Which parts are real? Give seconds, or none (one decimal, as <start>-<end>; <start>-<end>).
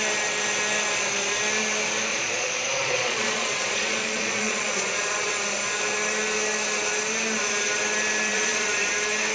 0.0-2.1; 5.3-8.3; 8.9-9.3